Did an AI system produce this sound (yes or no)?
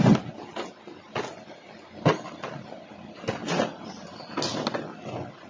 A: no